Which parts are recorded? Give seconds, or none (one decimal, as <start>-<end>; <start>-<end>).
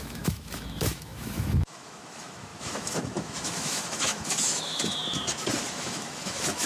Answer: 5.0-5.7